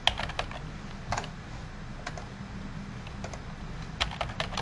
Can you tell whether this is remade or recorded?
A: recorded